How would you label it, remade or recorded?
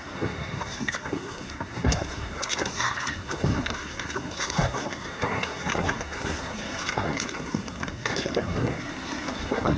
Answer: remade